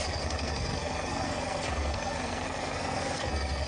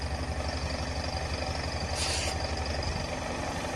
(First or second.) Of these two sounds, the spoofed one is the first